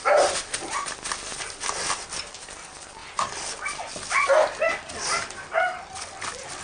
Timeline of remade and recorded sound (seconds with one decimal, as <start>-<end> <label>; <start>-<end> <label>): 0.0-6.6 recorded